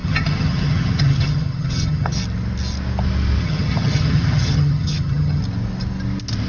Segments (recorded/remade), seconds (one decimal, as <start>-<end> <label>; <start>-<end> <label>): 0.0-2.2 remade; 2.2-3.4 recorded; 3.4-5.4 remade; 5.4-6.5 recorded